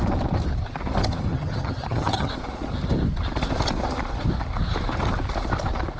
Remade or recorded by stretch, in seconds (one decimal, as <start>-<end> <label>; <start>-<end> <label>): 0.0-1.3 recorded; 1.3-2.3 remade; 2.3-6.0 recorded